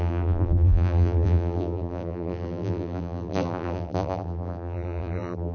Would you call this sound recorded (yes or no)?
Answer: no